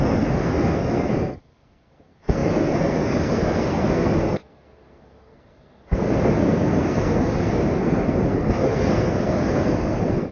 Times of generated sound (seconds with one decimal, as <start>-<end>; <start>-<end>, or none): 0.0-10.3